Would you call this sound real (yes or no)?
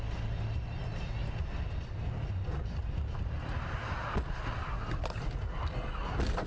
no